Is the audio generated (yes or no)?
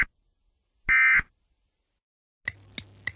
no